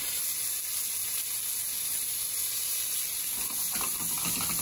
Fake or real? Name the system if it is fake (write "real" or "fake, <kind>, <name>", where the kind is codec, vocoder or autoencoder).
real